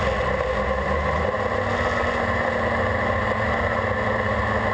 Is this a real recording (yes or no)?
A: yes